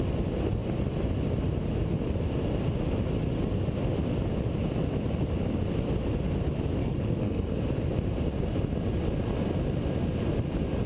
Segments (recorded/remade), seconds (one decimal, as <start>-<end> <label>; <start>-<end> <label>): 0.0-6.8 recorded; 6.8-7.6 remade; 7.6-10.9 recorded